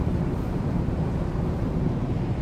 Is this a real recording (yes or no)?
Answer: no